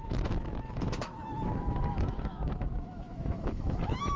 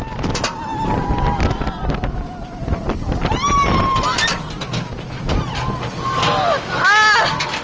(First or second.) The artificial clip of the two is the first